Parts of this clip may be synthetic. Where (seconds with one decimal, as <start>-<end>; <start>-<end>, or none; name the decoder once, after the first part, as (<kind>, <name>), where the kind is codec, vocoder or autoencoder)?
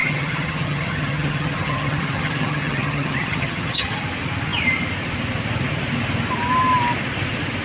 0.0-4.0 (vocoder, HiFi-GAN)